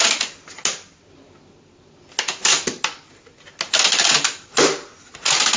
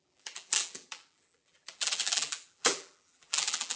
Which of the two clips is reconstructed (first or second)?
second